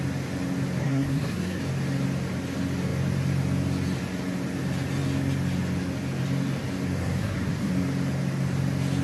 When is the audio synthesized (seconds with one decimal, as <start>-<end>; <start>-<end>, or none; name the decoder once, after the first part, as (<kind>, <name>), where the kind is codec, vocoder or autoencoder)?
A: 0.8-1.6 (codec, SNAC); 7.0-7.7